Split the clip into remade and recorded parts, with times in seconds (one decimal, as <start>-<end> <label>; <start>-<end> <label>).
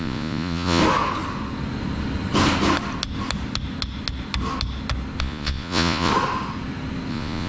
0.0-0.8 remade; 0.8-5.2 recorded; 5.2-6.1 remade; 6.1-7.1 recorded; 7.1-7.5 remade